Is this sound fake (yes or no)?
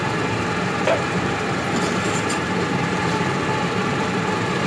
yes